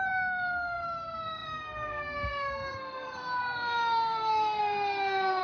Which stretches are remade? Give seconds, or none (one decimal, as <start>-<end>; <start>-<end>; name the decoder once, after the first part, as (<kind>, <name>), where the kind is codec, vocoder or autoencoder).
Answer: 0.0-5.4 (codec, SNAC)